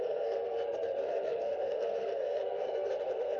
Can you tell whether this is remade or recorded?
remade